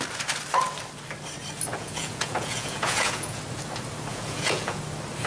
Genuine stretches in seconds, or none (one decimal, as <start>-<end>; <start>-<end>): 0.0-1.7; 3.4-4.1; 4.8-5.3